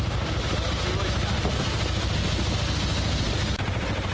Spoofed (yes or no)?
no